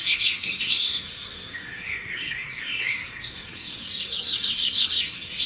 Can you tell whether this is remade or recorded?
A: remade